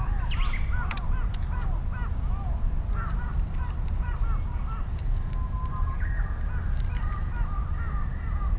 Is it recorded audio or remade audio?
recorded